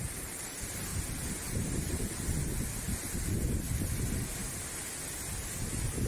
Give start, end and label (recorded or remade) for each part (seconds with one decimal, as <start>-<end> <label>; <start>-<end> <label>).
0.0-4.4 recorded; 4.4-5.3 remade; 5.3-6.1 recorded